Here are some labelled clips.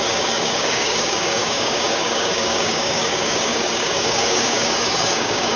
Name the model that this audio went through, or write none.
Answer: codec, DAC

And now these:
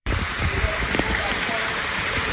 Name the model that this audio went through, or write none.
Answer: vocoder, BigVGAN v2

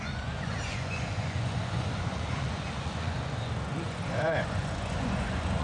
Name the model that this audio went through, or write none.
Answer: vocoder, Vocos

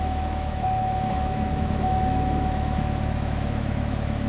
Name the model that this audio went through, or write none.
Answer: autoencoder, DAC-VAE